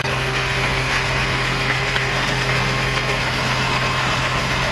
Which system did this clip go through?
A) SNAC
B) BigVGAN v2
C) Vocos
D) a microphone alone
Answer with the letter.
A